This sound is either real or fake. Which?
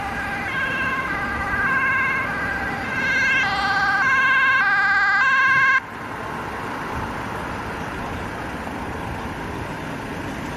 real